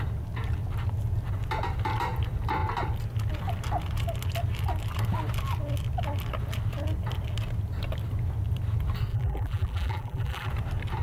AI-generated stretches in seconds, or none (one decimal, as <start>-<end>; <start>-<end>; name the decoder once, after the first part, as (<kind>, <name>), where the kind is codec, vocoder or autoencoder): 9.1-10.5 (vocoder, BigVGAN v2)